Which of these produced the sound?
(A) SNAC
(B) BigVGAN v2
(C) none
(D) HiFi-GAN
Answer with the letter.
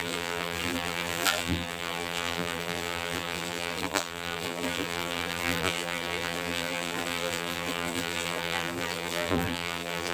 B